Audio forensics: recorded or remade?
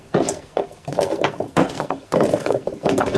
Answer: remade